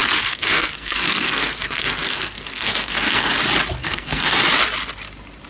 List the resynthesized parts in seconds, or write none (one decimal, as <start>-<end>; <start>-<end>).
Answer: 0.0-3.3; 3.8-4.4